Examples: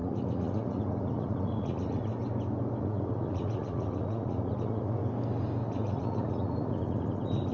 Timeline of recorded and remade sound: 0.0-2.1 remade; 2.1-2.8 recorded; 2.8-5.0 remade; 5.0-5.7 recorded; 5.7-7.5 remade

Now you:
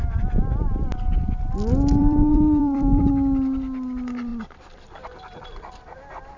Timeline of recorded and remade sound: 0.0-2.0 recorded; 2.0-3.1 remade; 3.1-6.4 recorded

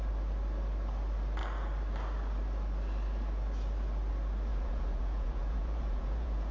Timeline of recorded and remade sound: 0.0-4.5 recorded; 4.5-6.5 remade

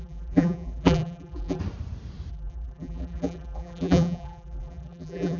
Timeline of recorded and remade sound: 0.0-1.6 remade; 1.6-2.3 recorded; 2.3-5.4 remade

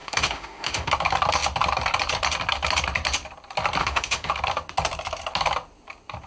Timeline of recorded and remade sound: 0.0-0.9 remade; 0.9-3.8 recorded; 3.8-4.3 remade; 4.3-6.3 recorded